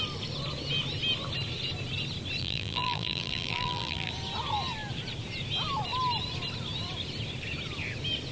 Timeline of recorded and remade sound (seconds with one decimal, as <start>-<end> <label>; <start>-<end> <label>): 0.0-2.4 recorded; 2.4-4.1 remade; 4.1-8.3 recorded